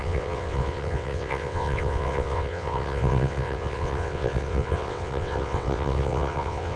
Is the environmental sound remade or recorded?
remade